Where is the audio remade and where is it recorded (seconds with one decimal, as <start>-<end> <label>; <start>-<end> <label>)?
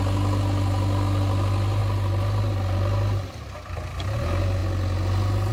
0.0-5.5 recorded